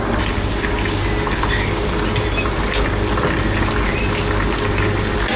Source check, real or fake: real